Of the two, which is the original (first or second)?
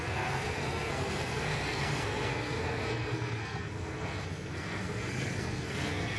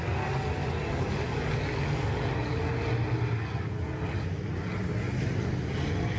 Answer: second